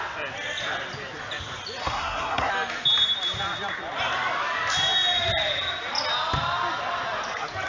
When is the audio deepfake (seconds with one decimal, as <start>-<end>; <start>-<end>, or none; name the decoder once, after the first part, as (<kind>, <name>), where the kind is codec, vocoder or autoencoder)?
1.8-2.5 (codec, SNAC)